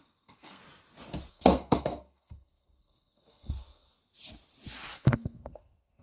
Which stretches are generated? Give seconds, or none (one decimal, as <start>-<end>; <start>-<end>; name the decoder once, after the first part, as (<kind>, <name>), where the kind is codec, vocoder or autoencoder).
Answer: 0.0-0.6 (codec, SNAC); 1.3-4.0; 4.9-6.0